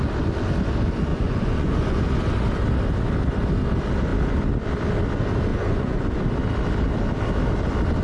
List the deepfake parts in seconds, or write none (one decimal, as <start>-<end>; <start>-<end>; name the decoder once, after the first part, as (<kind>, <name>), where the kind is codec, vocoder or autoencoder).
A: 1.1-2.0 (vocoder, Vocos); 5.5-6.1